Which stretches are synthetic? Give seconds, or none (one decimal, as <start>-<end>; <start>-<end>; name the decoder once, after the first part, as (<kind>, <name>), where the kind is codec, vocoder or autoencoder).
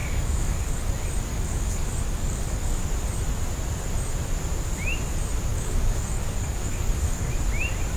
0.0-0.9 (codec, DAC); 1.3-2.8; 5.5-7.3